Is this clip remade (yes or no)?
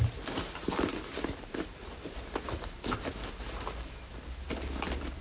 yes